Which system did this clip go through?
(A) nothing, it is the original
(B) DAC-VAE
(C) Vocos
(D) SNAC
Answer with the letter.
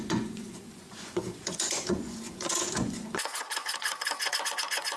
C